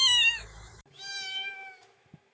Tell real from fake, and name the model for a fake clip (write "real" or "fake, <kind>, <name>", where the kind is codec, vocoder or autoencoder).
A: fake, autoencoder, DAC-VAE